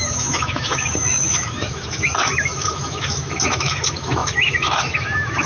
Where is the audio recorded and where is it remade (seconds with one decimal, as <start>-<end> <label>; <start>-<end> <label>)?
0.0-5.5 remade